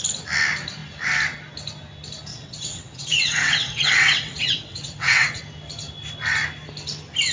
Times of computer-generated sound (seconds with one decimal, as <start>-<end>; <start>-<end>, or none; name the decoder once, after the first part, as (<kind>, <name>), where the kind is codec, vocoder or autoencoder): 2.3-5.4 (vocoder, WaveNeXt)